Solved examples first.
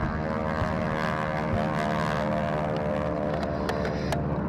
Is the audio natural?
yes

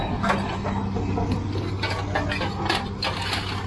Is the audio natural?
yes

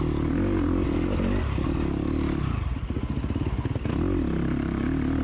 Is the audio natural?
yes